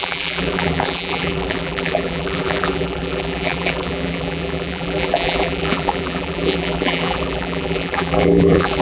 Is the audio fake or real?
fake